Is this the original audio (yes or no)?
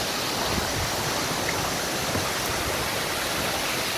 yes